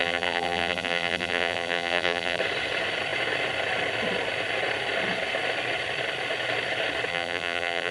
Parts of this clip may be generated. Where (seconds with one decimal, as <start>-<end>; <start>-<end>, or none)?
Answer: 0.0-2.4; 7.1-7.9